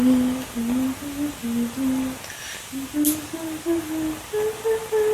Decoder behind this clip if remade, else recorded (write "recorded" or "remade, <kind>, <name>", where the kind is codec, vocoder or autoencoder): recorded